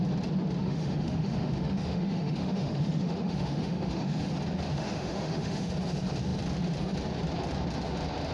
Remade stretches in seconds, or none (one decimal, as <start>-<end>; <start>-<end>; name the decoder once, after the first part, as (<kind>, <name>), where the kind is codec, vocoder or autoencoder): 0.6-4.3 (autoencoder, DAC-VAE); 4.7-5.7